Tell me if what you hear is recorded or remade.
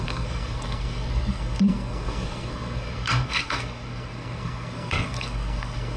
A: remade